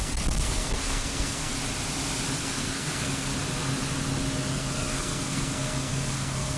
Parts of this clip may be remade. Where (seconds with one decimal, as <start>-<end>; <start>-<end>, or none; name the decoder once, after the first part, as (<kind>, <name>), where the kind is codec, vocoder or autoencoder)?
0.0-1.5 (codec, SNAC); 2.4-3.3; 4.5-6.6